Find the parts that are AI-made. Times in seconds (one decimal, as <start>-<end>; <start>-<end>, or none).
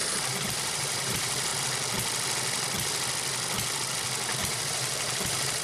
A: 0.0-1.5; 4.4-5.6